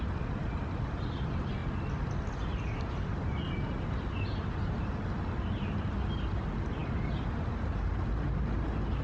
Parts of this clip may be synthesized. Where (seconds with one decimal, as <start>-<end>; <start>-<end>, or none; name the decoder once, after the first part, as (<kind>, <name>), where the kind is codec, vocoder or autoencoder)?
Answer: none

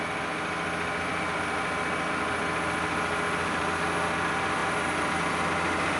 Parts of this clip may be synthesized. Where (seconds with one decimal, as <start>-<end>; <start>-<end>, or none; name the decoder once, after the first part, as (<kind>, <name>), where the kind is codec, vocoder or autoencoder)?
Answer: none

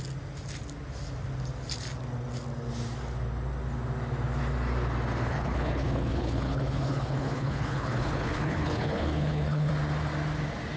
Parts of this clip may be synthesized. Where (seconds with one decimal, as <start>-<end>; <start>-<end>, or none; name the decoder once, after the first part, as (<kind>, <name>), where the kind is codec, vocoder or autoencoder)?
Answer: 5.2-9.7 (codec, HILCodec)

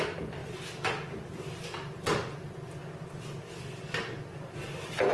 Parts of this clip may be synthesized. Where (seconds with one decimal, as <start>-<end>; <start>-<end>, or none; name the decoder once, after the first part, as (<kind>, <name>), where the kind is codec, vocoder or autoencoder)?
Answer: none